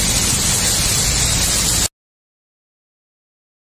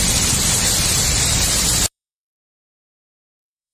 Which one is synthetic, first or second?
second